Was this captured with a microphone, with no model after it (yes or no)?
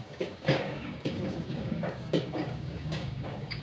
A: no